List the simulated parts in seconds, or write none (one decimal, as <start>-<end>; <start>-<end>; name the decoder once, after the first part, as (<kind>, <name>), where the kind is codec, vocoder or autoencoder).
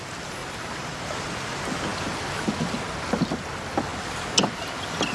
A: 0.4-1.3 (vocoder, BigVGAN v2); 3.9-5.1